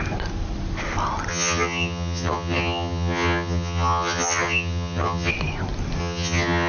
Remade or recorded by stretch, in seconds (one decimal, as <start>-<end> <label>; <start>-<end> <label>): 0.0-1.3 recorded; 1.3-5.3 remade; 5.3-6.0 recorded; 6.0-6.7 remade